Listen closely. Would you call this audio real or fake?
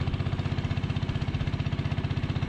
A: real